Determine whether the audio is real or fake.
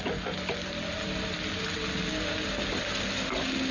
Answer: real